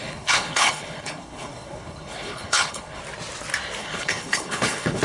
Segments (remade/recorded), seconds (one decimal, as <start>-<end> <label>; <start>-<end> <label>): 0.0-3.0 remade; 3.0-3.8 recorded; 3.8-5.0 remade